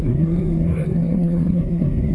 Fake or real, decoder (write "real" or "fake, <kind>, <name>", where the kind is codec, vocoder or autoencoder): fake, codec, SNAC